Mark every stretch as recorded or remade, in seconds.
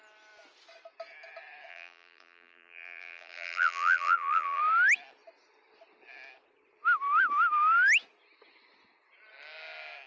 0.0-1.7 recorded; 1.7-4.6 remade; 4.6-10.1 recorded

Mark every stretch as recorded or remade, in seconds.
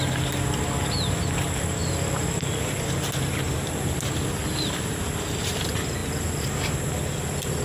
0.0-7.6 recorded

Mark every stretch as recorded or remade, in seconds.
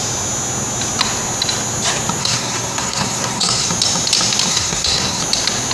0.0-2.2 recorded; 2.2-3.7 remade; 3.7-4.5 recorded; 4.5-5.2 remade; 5.2-5.7 recorded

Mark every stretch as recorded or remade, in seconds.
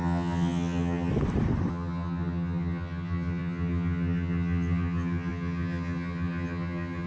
0.0-1.1 remade; 1.1-1.7 recorded; 1.7-7.1 remade